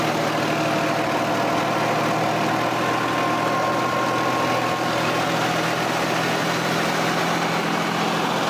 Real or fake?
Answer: real